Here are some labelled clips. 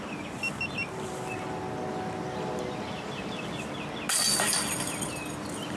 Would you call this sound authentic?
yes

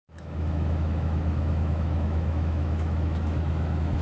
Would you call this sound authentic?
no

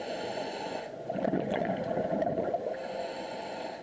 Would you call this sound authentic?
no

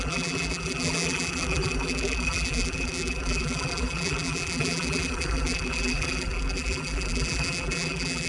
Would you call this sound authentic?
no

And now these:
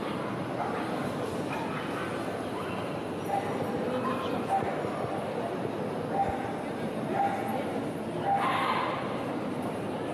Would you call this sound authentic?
yes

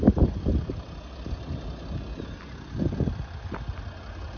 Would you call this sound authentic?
yes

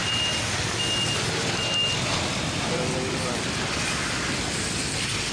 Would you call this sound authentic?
yes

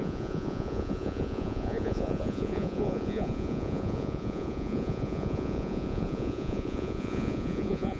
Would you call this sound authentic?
no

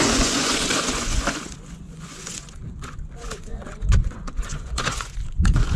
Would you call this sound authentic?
no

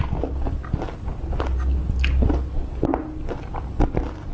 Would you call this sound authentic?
yes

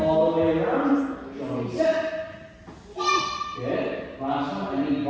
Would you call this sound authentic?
yes